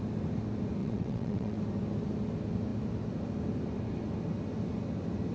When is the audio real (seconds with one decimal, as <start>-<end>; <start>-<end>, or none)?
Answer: 0.0-0.8; 1.6-5.3